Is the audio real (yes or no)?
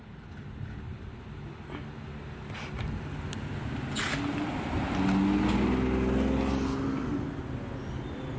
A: yes